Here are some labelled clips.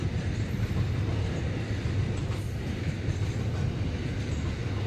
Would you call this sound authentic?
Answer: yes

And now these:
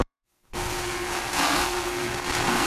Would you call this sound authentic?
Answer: no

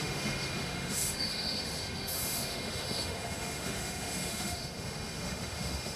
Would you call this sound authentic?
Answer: no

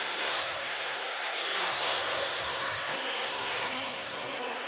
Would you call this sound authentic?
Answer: no